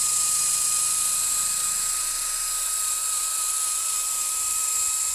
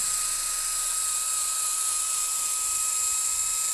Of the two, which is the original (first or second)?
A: second